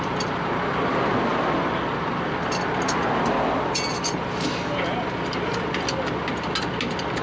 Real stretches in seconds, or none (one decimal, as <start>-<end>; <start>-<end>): 0.0-7.2